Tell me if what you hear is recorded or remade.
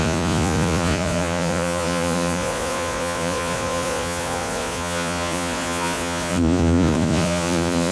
remade